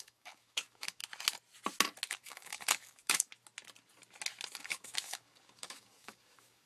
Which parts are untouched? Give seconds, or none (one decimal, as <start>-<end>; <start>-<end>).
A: 1.0-2.1; 3.3-4.5